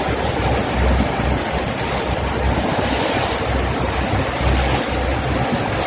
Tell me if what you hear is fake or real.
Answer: real